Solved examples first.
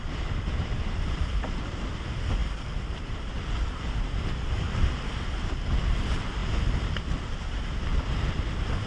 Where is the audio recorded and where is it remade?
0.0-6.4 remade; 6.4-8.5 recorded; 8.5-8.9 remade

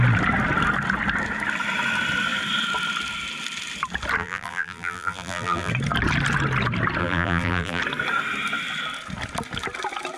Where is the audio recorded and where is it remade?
0.0-4.2 recorded; 4.2-5.7 remade; 5.7-7.0 recorded; 7.0-7.8 remade; 7.8-10.2 recorded

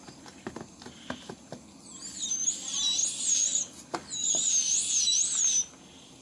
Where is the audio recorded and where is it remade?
0.0-6.2 recorded

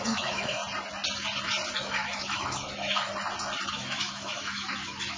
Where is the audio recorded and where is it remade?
0.0-0.6 remade; 0.6-1.8 recorded; 1.8-3.1 remade; 3.1-3.7 recorded; 3.7-5.2 remade